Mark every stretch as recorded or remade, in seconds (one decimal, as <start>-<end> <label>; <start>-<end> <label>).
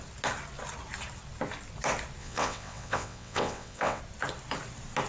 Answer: 0.0-2.2 recorded; 2.2-4.0 remade; 4.0-5.1 recorded